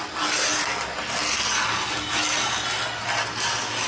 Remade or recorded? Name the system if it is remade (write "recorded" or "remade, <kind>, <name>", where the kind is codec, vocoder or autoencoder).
recorded